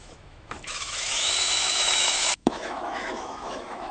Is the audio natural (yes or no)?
no